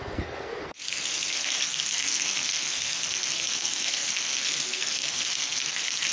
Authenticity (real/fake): fake